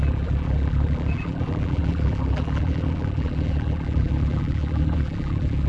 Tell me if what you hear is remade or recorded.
remade